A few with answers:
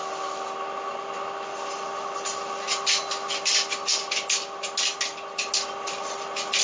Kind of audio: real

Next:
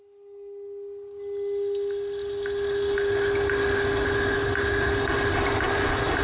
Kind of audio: real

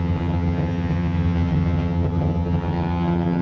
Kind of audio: fake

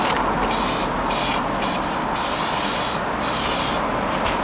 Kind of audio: real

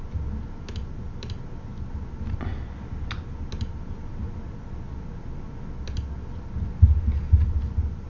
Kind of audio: real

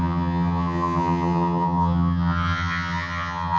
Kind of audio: fake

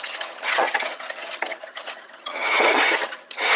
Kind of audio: fake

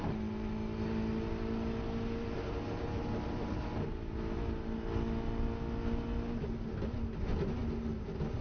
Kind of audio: real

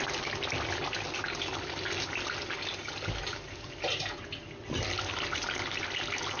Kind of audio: real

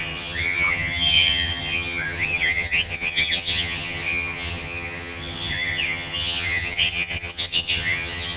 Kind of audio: fake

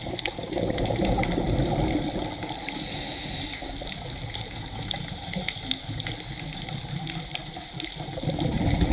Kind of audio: real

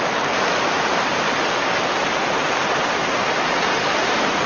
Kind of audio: real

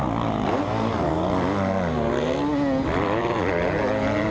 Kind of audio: real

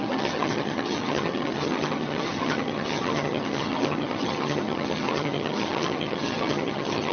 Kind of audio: fake